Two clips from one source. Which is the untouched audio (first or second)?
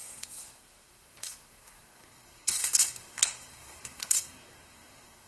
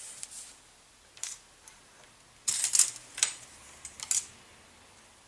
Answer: second